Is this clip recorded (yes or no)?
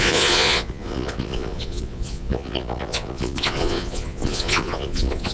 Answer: no